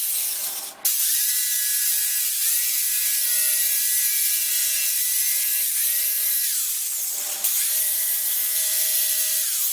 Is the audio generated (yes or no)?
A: no